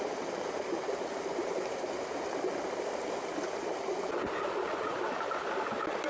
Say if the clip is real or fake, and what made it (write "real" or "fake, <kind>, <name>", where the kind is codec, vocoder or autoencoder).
real